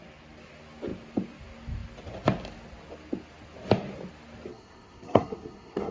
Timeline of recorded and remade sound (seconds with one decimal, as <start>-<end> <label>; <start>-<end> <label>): 0.0-4.5 recorded; 4.5-5.9 remade